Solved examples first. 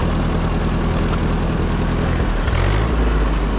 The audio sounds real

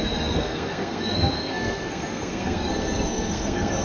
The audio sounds fake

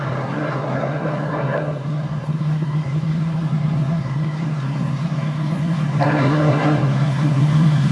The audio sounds fake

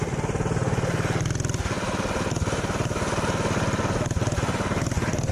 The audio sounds real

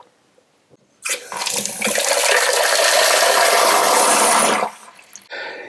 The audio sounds real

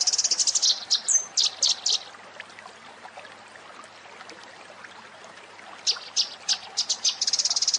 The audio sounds real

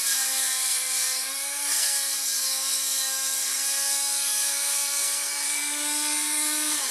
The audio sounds fake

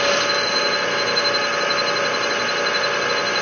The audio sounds real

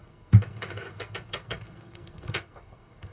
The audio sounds fake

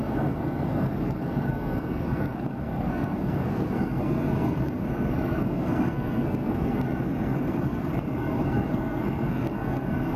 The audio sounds fake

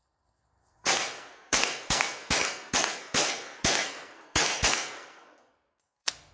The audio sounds fake